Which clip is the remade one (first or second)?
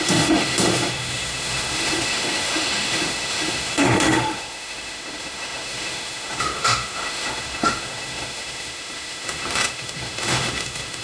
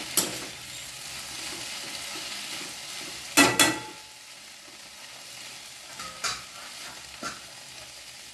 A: first